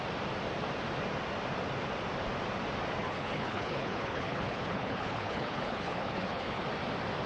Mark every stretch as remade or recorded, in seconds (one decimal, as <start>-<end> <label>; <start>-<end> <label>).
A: 0.0-3.0 recorded; 3.0-6.6 remade; 6.6-7.3 recorded